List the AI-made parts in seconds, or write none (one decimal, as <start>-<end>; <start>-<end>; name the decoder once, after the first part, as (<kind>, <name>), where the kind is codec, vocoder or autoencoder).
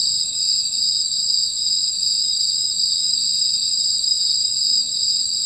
none